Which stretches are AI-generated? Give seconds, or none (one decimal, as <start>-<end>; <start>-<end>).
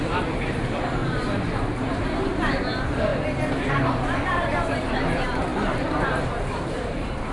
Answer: 0.0-1.0; 1.8-3.1; 3.7-7.3